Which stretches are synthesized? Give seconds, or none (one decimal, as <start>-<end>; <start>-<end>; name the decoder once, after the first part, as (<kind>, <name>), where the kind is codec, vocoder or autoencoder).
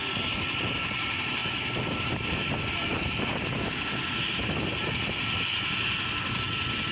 none